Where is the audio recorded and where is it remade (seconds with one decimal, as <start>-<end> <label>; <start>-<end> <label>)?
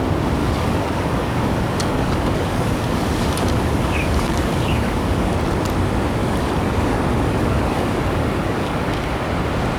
0.0-0.4 recorded; 0.4-5.4 remade; 5.4-6.2 recorded; 6.2-9.2 remade; 9.2-9.8 recorded